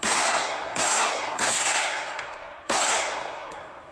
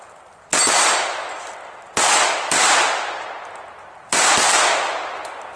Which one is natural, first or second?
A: second